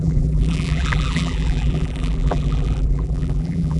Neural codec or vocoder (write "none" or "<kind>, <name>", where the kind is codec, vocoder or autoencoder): vocoder, BigVGAN v2